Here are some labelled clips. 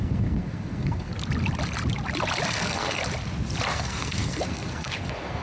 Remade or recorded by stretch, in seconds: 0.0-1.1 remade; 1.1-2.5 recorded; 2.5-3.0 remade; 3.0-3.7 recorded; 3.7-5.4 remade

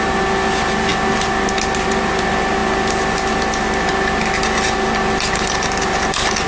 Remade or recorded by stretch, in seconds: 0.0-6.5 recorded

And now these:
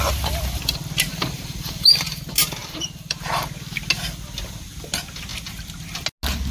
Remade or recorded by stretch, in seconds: 0.0-1.1 recorded; 1.1-2.2 remade; 2.2-2.6 recorded; 2.6-3.4 remade; 3.4-6.5 recorded

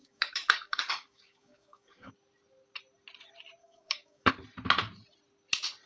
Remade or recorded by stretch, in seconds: 0.0-2.1 remade; 2.1-3.6 recorded; 3.6-4.3 remade; 4.3-5.9 recorded